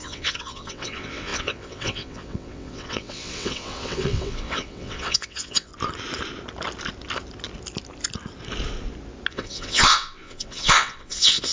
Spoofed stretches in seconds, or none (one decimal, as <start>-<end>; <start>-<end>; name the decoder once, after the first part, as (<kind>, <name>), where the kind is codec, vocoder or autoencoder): 0.0-5.7 (vocoder, WaveNeXt); 9.3-11.5